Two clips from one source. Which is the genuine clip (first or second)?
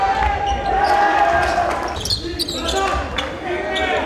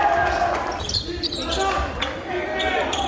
first